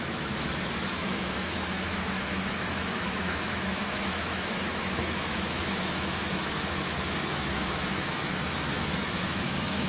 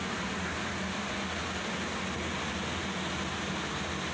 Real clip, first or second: second